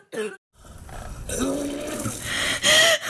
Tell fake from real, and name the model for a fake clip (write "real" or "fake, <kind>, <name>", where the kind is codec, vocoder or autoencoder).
real